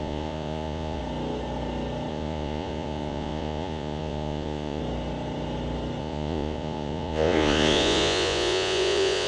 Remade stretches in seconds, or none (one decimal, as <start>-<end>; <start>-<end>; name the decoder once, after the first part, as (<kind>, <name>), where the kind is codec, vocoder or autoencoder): 0.0-1.0 (vocoder, Vocos); 2.1-4.8; 6.0-9.3